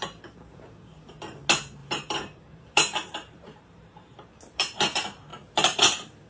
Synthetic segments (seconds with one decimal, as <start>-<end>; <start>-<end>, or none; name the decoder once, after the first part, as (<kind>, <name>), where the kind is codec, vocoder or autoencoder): 1.8-4.8 (vocoder, BigVGAN v2); 5.3-6.3